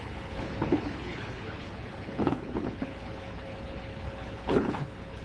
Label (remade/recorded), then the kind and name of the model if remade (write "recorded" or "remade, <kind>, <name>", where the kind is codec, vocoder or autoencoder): remade, codec, HILCodec